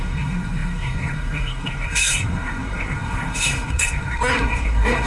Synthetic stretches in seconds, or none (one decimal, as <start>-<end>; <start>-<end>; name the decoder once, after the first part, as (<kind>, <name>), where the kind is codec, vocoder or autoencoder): 0.0-5.1 (codec, SNAC)